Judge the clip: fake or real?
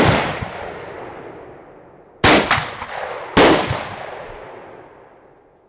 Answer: real